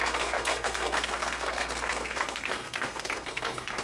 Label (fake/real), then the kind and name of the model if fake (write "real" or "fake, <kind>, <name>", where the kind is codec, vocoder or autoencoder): fake, codec, SNAC